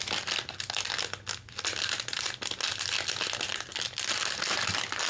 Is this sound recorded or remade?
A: recorded